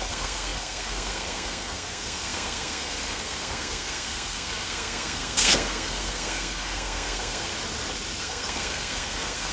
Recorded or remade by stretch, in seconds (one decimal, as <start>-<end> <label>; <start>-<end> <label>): 0.0-7.5 remade; 7.5-8.2 recorded; 8.2-9.5 remade